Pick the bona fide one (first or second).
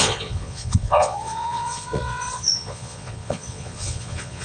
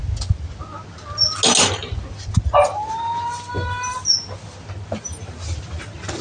second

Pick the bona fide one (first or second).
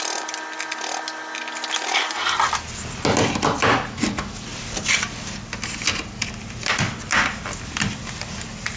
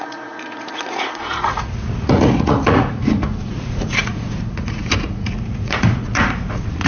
first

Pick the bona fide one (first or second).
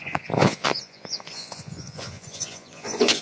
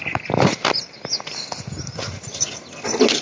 second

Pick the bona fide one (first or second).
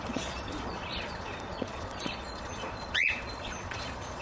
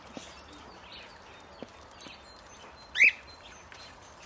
second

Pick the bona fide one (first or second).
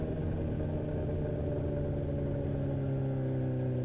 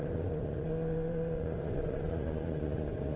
first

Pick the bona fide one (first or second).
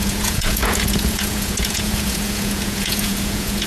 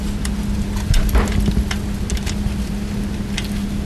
second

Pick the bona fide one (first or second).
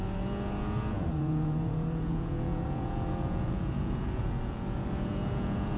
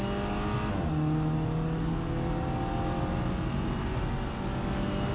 second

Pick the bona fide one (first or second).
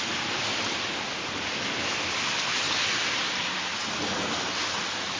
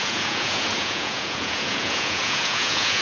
first